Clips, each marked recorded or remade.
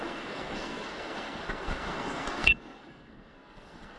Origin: remade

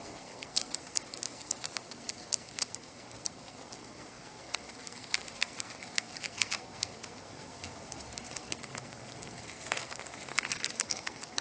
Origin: remade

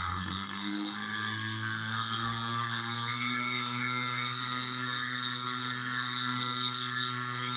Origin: remade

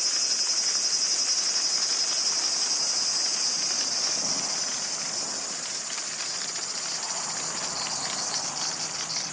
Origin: recorded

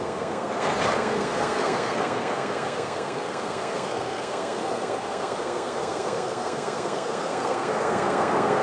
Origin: remade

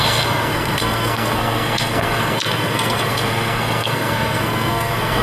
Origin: remade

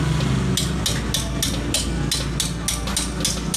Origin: recorded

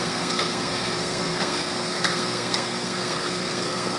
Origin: remade